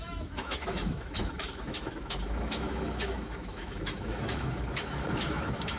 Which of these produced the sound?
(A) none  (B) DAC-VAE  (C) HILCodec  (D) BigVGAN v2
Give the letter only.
B